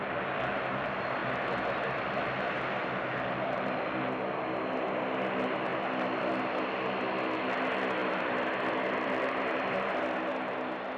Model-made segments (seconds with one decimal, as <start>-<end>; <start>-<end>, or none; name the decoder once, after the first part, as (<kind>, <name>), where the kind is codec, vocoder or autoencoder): 8.0-10.0 (vocoder, BigVGAN v2)